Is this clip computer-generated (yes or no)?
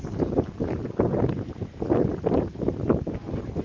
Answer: no